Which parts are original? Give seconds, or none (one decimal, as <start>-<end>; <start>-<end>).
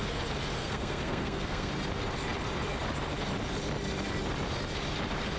0.0-0.6; 1.7-5.4